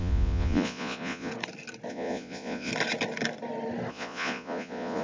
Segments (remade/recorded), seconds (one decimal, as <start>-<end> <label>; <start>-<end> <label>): 0.0-1.3 remade; 1.3-1.9 recorded; 1.9-2.7 remade; 2.7-3.9 recorded; 3.9-5.0 remade

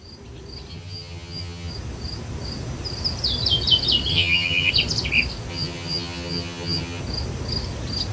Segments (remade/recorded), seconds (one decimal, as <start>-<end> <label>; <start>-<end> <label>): 0.0-0.7 recorded; 0.7-1.7 remade; 1.7-4.1 recorded; 4.1-4.7 remade; 4.7-5.5 recorded; 5.5-7.0 remade; 7.0-8.1 recorded

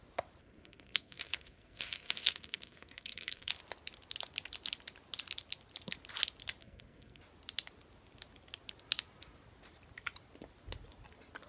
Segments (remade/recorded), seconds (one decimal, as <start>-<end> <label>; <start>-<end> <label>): 0.0-0.4 recorded; 0.4-3.5 remade; 3.5-6.6 recorded; 6.6-7.2 remade; 7.2-11.5 recorded

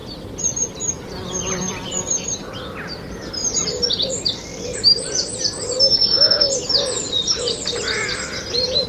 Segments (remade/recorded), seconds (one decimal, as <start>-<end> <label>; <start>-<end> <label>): 0.0-8.9 recorded